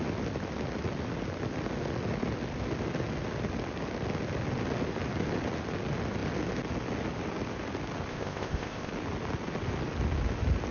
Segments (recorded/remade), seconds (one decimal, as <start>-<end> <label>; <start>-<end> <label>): 0.0-8.1 recorded; 8.1-8.9 remade; 8.9-10.7 recorded